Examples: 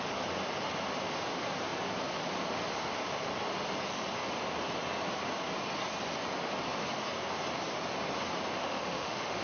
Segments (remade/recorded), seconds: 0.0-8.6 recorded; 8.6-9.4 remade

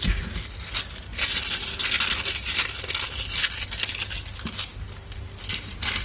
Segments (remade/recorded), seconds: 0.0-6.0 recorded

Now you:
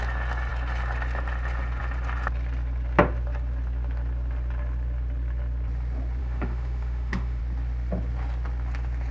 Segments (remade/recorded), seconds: 0.0-6.2 recorded; 6.2-7.4 remade; 7.4-9.1 recorded